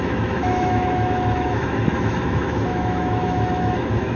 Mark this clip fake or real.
fake